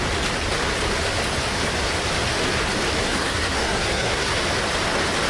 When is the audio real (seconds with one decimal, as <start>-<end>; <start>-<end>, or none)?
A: 0.0-3.0; 4.3-5.3